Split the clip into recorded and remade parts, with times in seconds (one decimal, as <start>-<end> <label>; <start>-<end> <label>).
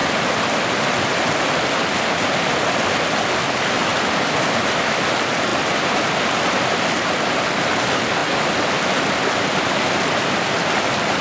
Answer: 0.0-11.2 recorded